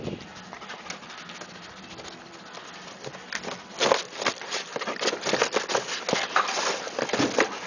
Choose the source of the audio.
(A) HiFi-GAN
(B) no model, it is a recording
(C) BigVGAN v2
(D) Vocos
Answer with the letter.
B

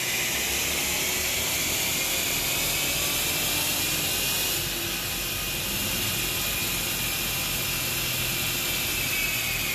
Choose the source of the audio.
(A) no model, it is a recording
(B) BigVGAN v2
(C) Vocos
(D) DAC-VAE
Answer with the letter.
A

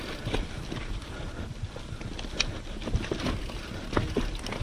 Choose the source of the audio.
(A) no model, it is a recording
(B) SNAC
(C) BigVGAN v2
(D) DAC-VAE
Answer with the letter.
A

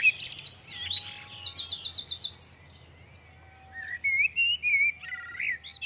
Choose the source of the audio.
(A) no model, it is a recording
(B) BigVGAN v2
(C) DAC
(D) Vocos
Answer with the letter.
A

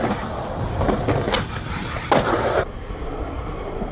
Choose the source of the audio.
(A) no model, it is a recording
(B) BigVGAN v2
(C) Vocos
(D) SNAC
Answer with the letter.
A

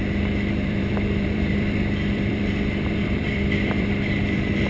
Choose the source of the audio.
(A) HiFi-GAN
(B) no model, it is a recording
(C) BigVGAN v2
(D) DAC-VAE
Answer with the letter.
C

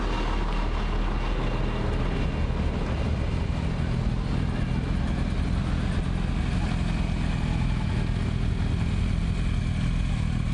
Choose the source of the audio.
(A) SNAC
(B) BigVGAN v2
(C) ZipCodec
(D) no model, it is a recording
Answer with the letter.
D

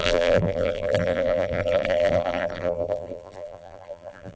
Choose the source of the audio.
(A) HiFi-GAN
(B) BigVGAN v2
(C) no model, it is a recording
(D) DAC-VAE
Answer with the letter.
B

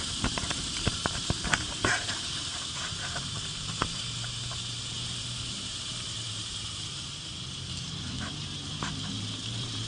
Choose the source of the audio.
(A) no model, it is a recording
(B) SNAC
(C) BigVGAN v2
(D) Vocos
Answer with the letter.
C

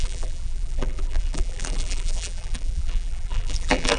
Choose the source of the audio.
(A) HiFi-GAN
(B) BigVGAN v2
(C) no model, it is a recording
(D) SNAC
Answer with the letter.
B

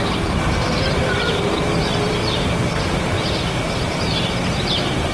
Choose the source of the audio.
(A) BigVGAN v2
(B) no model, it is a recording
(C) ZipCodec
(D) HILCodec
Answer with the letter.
A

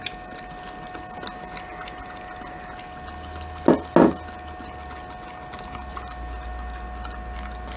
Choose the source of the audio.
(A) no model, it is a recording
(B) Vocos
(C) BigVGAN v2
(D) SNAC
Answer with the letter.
A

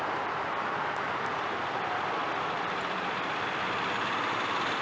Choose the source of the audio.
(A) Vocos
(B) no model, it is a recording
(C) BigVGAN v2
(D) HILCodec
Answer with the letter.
C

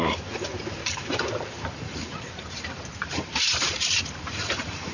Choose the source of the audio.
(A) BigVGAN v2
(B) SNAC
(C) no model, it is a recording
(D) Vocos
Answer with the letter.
A